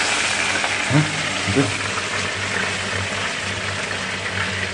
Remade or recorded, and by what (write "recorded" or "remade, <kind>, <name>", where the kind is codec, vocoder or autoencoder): recorded